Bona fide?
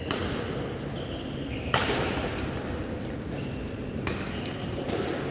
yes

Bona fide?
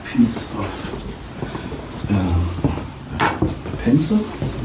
yes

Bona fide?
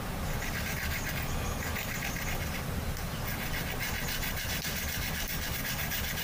yes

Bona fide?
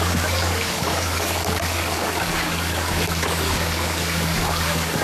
no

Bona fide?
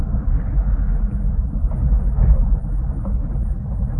yes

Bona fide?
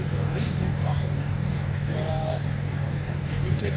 no